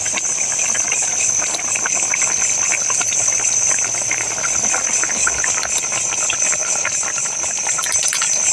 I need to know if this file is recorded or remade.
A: recorded